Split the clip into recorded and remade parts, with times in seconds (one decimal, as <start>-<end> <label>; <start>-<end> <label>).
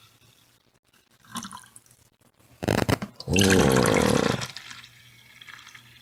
0.0-1.3 recorded; 1.3-3.6 remade; 3.6-6.0 recorded